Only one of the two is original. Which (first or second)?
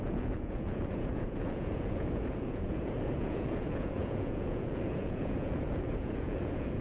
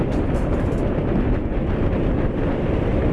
second